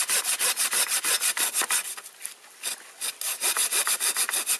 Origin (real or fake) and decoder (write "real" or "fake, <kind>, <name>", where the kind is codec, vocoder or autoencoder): real